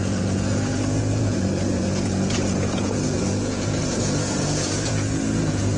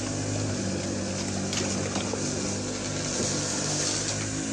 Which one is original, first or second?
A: second